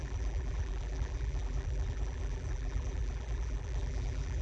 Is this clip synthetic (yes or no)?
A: yes